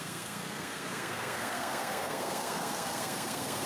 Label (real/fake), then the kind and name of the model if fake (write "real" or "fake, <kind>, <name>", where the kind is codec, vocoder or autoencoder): fake, codec, SNAC